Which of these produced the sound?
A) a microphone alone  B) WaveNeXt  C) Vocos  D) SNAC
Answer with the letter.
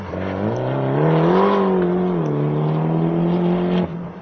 A